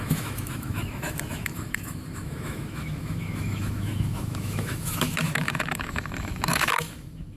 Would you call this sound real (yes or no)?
no